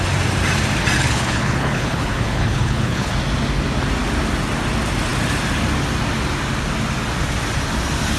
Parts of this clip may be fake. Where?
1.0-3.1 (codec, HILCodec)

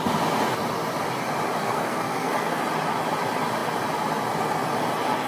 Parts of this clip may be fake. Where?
1.6-2.6 (codec, SNAC)

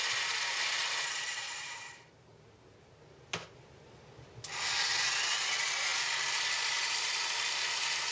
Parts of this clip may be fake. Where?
0.8-2.3 (vocoder, BigVGAN v2)

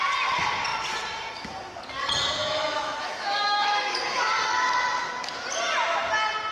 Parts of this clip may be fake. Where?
2.4-4.3 (autoencoder, DAC-VAE)